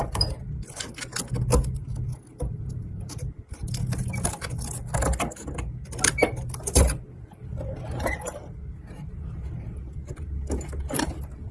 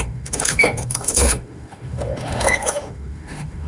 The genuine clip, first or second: first